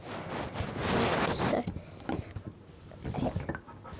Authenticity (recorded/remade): recorded